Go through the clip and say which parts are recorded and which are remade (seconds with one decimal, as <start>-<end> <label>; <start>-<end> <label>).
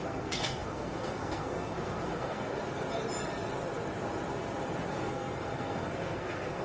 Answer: 0.0-2.6 remade; 2.6-4.9 recorded; 4.9-6.6 remade